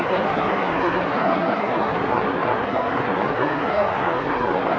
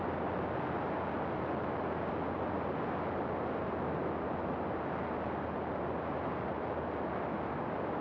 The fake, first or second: first